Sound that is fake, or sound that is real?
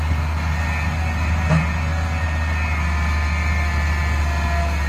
real